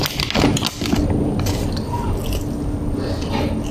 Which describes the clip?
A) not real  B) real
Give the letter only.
B